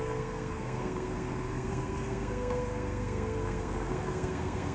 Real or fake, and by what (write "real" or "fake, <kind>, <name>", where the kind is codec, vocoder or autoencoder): fake, codec, SNAC